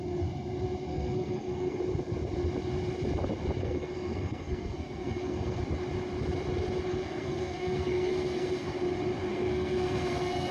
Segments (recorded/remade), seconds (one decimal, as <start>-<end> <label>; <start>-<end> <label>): 0.0-0.9 recorded; 0.9-1.8 remade; 1.8-3.6 recorded; 3.6-5.6 remade; 5.6-6.9 recorded; 6.9-8.8 remade; 8.8-9.3 recorded; 9.3-10.5 remade